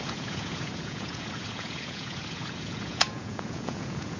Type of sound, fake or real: fake